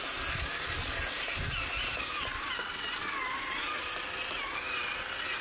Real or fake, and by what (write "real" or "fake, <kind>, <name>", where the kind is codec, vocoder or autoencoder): real